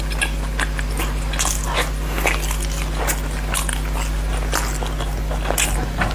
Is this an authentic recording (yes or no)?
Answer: yes